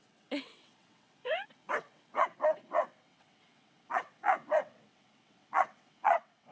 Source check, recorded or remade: remade